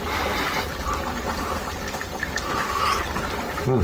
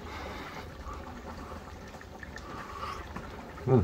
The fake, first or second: second